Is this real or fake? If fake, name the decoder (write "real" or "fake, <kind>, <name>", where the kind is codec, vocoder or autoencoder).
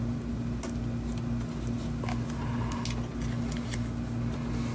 real